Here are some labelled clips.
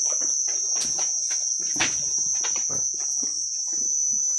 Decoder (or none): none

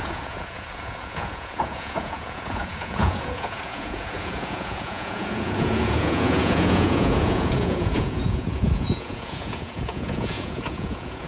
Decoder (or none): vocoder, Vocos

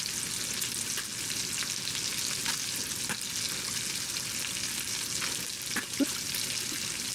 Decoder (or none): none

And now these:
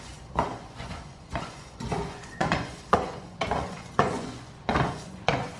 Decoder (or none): vocoder, Vocos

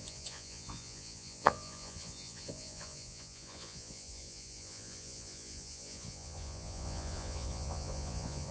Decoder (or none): vocoder, Vocos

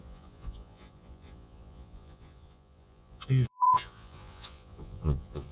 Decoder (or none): vocoder, Vocos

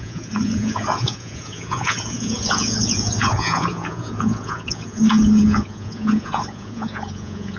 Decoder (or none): vocoder, Vocos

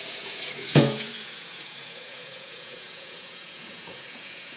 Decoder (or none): vocoder, Vocos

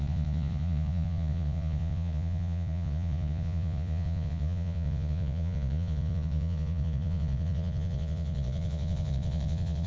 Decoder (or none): vocoder, Vocos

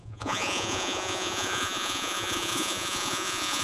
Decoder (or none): vocoder, Vocos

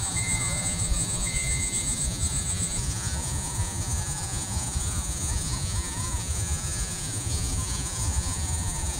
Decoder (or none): vocoder, Vocos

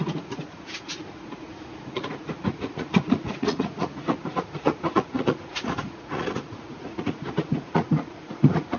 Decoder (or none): vocoder, Vocos